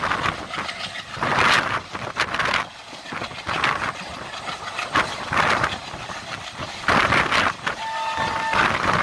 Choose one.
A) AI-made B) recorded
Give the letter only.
B